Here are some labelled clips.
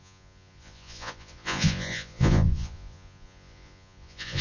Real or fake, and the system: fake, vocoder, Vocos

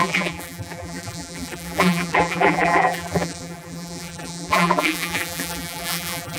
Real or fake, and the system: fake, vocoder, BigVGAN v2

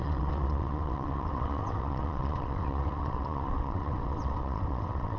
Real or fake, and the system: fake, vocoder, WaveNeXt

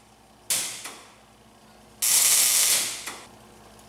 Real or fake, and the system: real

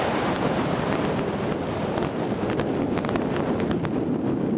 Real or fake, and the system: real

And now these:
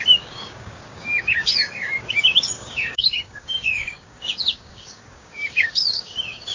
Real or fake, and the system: fake, codec, DAC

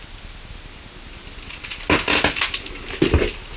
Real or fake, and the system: real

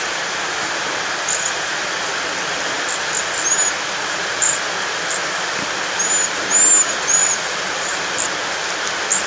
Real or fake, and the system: real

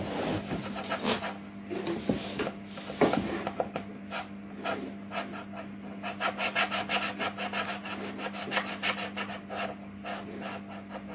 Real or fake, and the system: real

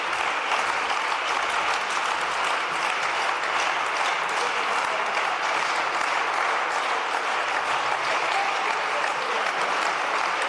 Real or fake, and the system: real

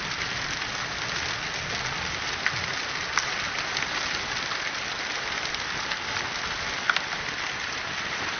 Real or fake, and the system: real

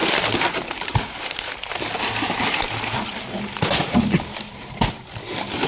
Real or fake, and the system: real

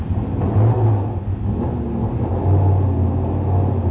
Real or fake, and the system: real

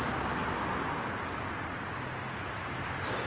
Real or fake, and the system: real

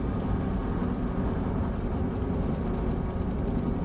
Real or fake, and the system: real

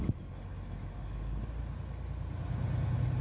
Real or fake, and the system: real